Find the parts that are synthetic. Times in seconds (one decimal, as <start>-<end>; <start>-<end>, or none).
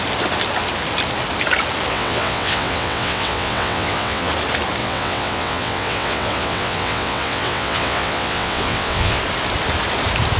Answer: 1.9-4.3; 4.8-9.2